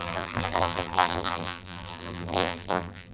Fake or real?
fake